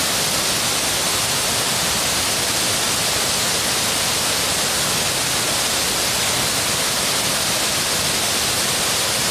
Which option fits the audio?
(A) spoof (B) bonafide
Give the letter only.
B